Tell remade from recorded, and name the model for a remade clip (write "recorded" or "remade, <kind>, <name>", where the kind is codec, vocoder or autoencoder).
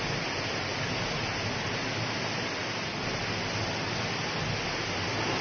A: recorded